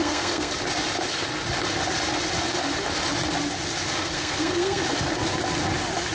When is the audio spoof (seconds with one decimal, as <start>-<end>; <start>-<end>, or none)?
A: 0.0-0.5; 4.0-4.8